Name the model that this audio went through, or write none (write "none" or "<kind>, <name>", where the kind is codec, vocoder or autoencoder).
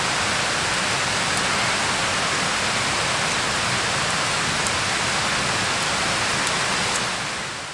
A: none